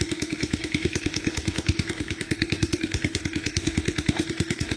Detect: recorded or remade remade